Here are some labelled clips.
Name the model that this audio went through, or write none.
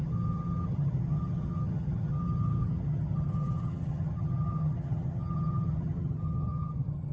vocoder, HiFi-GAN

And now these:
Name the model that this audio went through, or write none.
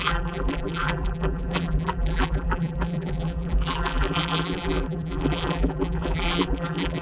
vocoder, BigVGAN v2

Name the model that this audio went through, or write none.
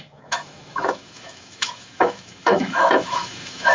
autoencoder, DAC-VAE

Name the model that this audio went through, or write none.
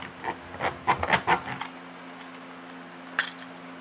none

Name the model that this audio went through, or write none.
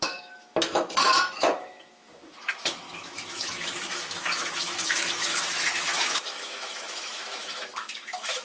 autoencoder, DAC-VAE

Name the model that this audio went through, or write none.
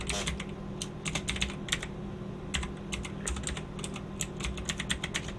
none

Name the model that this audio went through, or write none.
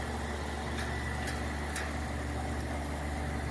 none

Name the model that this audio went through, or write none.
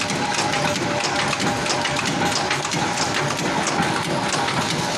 none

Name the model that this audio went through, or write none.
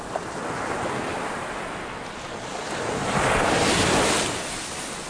none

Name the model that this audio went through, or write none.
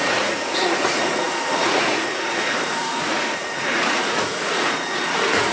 vocoder, Vocos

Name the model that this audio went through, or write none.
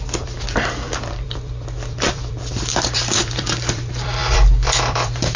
vocoder, BigVGAN v2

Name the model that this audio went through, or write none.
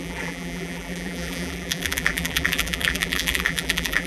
vocoder, BigVGAN v2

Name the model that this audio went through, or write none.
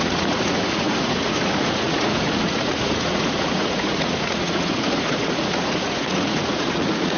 vocoder, Vocos